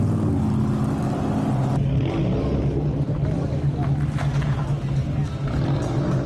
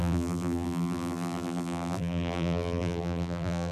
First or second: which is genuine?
first